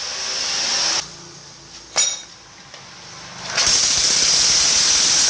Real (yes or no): yes